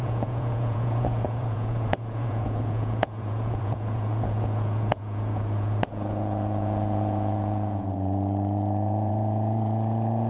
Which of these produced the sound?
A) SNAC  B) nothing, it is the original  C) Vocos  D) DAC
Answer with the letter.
C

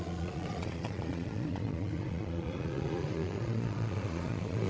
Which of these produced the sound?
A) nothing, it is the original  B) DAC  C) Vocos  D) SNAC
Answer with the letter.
C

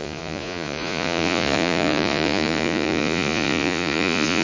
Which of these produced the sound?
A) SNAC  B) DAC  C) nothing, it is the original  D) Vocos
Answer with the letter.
D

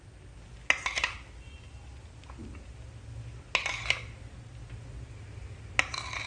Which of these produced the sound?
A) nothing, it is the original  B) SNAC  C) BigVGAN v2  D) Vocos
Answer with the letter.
A